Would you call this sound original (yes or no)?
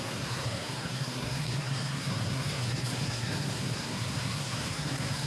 no